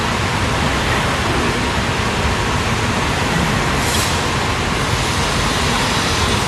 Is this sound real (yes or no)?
yes